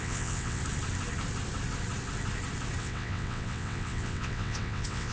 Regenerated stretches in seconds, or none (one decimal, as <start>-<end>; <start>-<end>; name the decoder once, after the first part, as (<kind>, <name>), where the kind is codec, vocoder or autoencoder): 0.0-0.6 (vocoder, WaveNeXt); 2.8-5.1